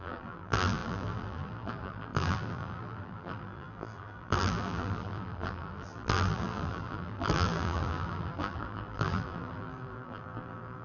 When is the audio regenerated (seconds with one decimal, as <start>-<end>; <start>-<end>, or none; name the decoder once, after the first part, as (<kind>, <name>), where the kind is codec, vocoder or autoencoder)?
0.0-10.8 (vocoder, BigVGAN v2)